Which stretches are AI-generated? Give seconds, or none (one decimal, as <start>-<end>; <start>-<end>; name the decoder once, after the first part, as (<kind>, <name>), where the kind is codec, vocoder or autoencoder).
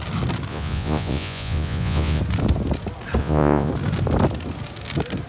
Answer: 0.5-2.2 (vocoder, Vocos); 3.2-3.7